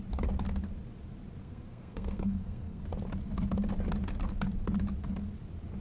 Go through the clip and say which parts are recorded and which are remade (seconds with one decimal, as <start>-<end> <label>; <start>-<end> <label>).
0.0-1.4 recorded; 1.4-2.8 remade; 2.8-5.8 recorded